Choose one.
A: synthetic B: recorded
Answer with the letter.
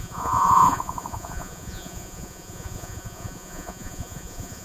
A